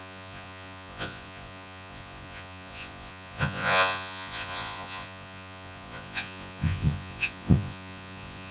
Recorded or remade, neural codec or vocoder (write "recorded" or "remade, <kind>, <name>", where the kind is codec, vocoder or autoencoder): remade, vocoder, Vocos